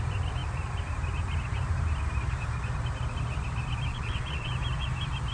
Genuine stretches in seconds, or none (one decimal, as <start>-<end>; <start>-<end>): 0.0-3.9; 4.5-5.3